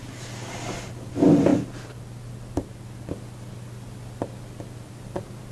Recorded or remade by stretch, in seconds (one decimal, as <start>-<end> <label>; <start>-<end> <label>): 0.0-5.5 recorded